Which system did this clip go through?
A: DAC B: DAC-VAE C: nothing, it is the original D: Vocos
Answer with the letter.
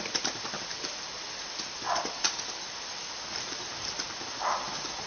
C